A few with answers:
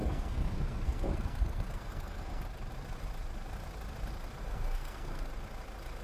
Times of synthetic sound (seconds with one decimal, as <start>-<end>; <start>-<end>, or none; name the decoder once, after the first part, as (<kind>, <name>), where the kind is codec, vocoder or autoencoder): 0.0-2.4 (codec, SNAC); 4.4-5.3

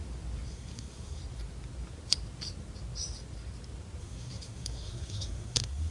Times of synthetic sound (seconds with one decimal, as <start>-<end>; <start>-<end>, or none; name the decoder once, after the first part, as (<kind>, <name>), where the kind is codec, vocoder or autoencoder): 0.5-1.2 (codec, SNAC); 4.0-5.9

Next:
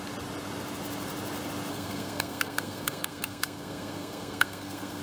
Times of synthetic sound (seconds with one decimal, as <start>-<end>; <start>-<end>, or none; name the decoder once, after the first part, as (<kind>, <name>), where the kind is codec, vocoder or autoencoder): 1.7-5.0 (codec, SNAC)

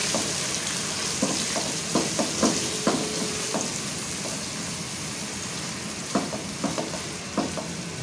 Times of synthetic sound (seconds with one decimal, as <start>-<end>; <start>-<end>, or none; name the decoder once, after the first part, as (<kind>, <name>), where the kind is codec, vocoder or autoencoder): none

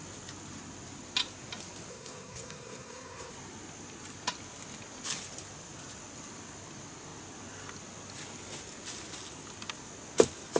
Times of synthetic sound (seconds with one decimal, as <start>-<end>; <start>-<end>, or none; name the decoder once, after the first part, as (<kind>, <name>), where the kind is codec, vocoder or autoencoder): 1.9-3.3 (codec, SNAC)